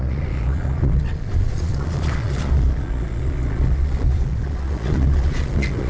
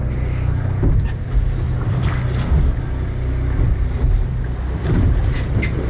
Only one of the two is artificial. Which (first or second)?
first